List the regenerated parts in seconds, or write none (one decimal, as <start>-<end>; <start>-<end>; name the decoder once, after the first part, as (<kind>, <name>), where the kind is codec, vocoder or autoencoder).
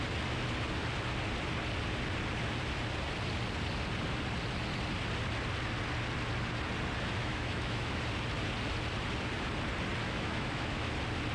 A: 7.2-8.0 (autoencoder, DAC-VAE); 10.0-10.9